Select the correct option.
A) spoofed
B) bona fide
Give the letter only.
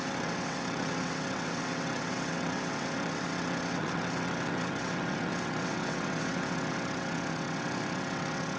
A